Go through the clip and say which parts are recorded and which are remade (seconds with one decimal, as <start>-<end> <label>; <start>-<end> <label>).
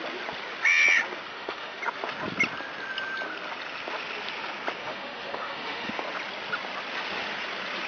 0.0-1.3 recorded; 1.3-1.8 remade; 1.8-4.8 recorded; 4.8-5.9 remade; 5.9-7.9 recorded